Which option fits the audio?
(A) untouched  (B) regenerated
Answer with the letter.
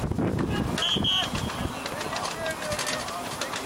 A